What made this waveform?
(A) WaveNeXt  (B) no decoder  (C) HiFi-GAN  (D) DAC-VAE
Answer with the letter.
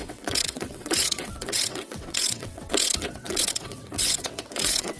A